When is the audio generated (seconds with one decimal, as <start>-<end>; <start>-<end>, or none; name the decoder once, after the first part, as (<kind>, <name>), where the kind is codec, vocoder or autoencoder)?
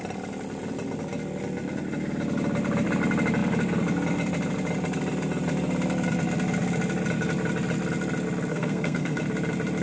8.5-9.2 (codec, SNAC)